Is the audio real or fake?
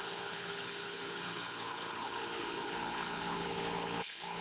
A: fake